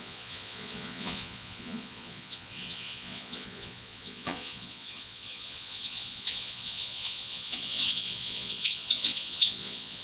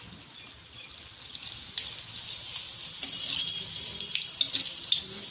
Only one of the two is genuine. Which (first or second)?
second